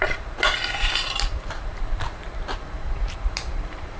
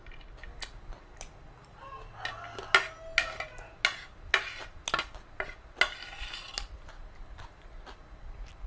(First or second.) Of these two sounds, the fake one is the first